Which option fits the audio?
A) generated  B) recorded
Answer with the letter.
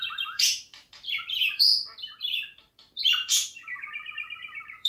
A